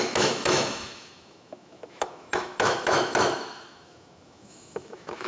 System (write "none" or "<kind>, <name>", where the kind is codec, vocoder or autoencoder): autoencoder, DAC-VAE